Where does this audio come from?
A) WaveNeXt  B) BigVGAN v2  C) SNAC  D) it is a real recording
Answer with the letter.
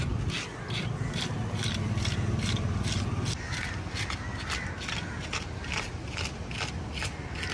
D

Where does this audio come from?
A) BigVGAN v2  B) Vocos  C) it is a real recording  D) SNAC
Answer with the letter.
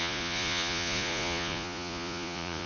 B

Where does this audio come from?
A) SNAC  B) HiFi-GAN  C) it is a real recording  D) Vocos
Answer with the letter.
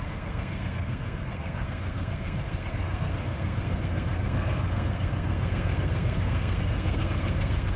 A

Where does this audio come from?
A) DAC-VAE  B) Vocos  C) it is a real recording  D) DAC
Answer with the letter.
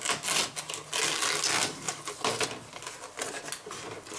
C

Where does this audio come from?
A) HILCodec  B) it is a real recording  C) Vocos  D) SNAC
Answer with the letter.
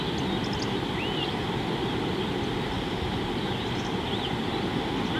B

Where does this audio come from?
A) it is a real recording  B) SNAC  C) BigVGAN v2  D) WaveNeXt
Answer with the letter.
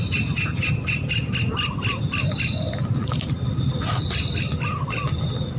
A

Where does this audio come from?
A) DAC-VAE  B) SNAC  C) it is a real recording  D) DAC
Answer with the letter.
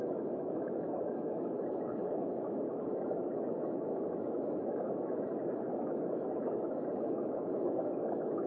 A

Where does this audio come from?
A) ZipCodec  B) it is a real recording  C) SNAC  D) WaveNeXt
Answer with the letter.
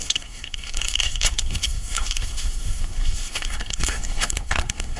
C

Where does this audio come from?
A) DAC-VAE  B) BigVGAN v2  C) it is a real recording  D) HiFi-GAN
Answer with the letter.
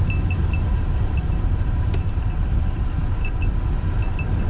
C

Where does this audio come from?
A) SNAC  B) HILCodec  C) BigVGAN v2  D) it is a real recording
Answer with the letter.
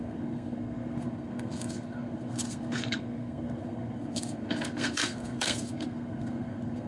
A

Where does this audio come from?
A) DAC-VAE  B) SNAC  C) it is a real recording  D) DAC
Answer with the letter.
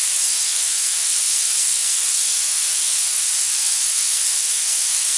B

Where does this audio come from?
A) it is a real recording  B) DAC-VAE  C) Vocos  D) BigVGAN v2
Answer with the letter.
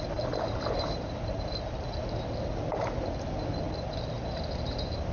A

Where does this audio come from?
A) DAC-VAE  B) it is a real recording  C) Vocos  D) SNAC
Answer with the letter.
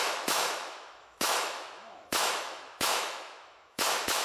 A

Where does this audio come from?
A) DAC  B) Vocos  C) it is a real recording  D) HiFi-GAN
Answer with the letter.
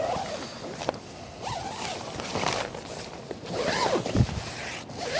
C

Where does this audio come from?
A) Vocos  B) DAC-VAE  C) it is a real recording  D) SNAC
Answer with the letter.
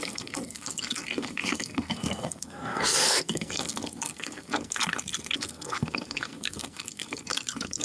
D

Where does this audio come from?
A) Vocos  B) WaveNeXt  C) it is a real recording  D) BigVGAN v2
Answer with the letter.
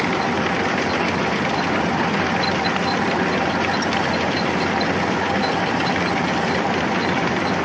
D